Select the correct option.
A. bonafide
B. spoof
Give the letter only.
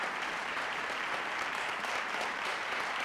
B